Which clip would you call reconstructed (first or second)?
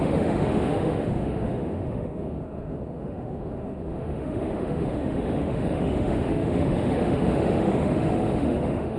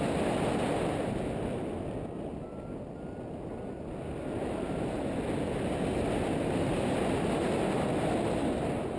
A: first